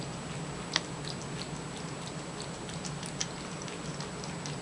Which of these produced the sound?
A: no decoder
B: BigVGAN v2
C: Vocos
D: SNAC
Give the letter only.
A